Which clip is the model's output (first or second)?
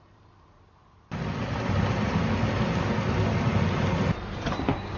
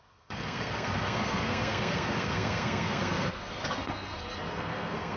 second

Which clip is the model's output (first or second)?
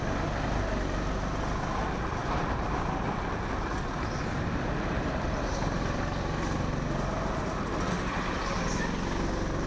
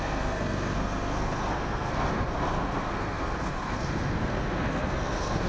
second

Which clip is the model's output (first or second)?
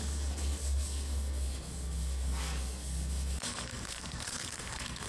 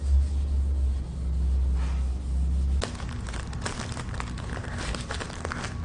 first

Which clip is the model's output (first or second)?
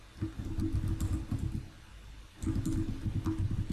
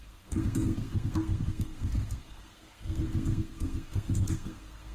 second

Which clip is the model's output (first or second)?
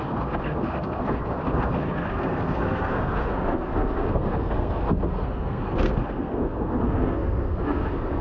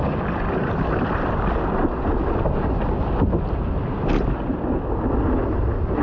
first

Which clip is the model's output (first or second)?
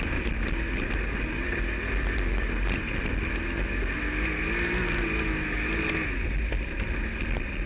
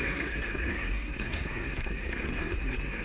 second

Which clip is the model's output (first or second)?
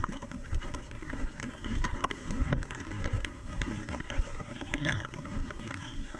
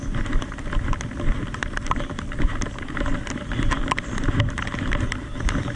first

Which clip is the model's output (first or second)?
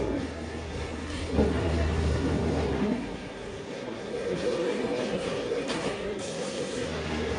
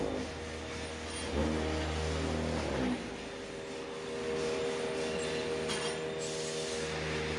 first